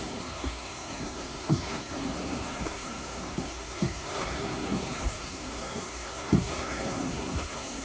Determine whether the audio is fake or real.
fake